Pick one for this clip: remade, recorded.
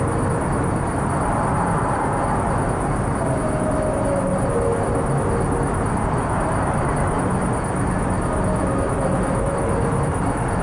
recorded